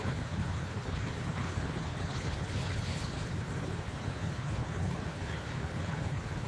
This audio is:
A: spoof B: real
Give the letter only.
A